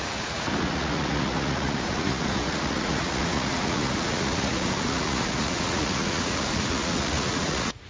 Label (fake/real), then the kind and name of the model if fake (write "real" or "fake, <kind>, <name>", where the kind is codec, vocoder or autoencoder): fake, vocoder, Vocos